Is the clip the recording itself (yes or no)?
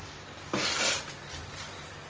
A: yes